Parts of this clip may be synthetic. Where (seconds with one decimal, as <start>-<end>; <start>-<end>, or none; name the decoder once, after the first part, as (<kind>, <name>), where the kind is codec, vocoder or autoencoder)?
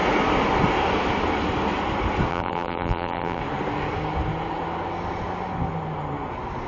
2.3-3.4 (vocoder, BigVGAN v2)